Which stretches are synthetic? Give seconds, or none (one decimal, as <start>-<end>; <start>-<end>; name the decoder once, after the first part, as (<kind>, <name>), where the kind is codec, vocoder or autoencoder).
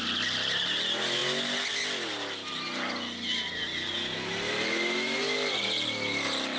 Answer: none